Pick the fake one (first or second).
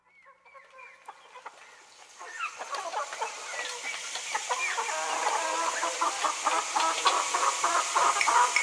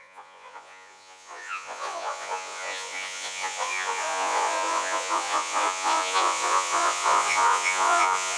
second